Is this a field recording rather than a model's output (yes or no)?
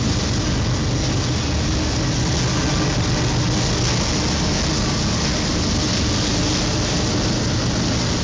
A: yes